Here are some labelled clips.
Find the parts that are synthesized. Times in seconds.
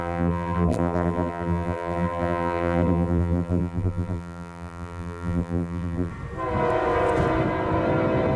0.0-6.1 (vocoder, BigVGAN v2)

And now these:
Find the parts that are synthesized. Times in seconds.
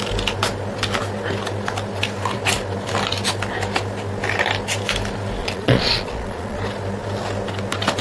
5.4-6.6 (vocoder, Vocos)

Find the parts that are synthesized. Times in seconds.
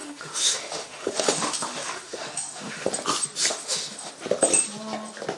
0.0-2.9 (autoencoder, DAC-VAE); 3.5-4.1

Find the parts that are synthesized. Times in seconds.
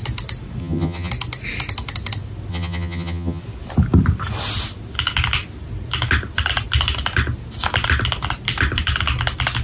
0.6-1.1 (vocoder, HiFi-GAN); 2.5-3.4